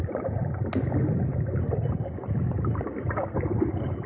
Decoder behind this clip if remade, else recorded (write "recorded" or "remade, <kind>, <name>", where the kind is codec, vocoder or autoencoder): recorded